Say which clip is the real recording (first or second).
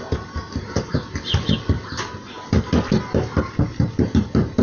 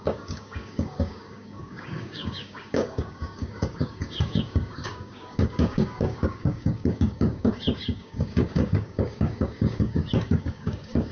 first